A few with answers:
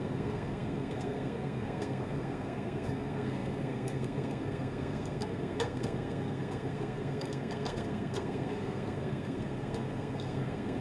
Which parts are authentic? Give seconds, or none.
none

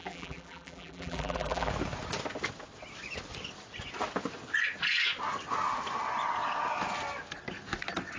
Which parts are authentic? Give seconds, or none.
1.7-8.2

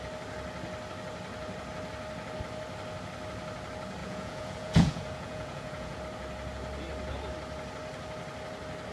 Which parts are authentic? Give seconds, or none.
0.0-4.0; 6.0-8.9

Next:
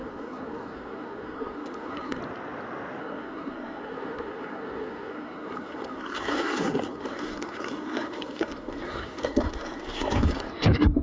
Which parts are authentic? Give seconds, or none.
2.2-3.0